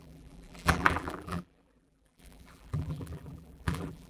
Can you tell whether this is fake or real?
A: fake